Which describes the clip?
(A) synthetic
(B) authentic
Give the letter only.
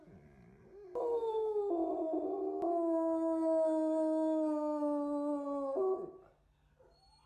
B